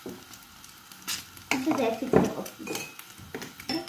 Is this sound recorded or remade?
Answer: recorded